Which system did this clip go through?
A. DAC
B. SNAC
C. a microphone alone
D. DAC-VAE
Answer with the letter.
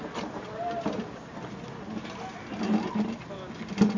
C